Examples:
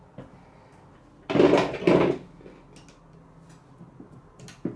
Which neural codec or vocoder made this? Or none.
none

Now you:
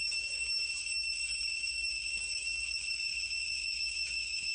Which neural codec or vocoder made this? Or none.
autoencoder, DAC-VAE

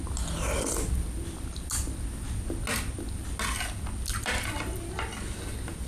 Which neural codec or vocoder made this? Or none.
none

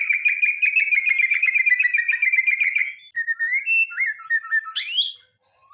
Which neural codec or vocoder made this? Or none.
none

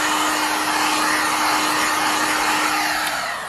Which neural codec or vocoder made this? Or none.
none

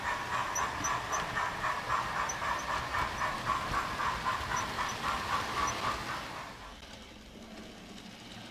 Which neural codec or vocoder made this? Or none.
none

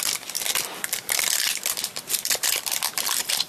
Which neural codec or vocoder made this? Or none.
vocoder, BigVGAN v2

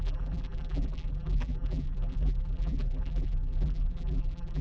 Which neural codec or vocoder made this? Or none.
vocoder, BigVGAN v2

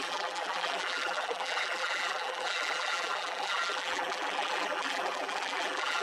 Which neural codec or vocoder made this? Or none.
vocoder, BigVGAN v2